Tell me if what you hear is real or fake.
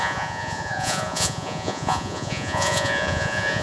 fake